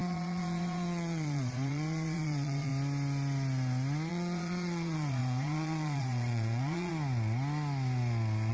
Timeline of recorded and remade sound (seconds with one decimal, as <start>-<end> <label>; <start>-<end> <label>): 0.0-2.7 remade; 2.7-4.1 recorded; 4.1-6.9 remade; 6.9-8.5 recorded